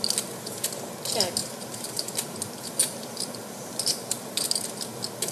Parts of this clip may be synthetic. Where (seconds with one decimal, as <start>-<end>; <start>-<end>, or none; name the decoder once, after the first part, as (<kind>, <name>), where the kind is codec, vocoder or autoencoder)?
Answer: 1.4-4.6 (vocoder, BigVGAN v2)